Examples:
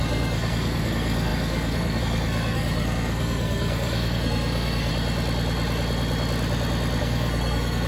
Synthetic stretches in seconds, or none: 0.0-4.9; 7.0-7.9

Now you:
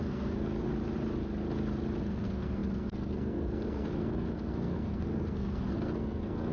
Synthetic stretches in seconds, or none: 0.0-0.7; 2.0-6.5

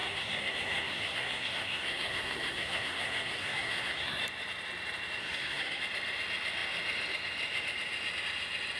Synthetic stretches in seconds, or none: 0.0-4.2; 5.2-5.8

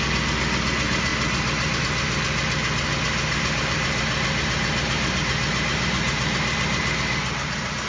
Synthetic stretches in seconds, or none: none

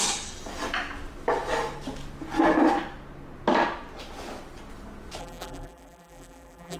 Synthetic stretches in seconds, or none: 5.2-6.8

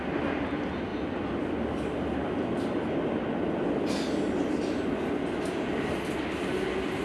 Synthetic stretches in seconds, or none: none

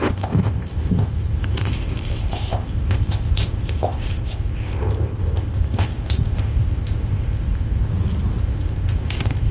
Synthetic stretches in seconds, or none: 0.0-7.9; 8.4-9.5